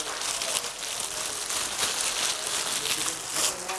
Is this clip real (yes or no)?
yes